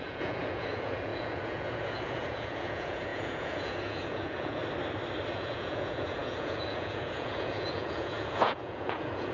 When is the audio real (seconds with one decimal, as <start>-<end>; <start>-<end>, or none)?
4.6-5.3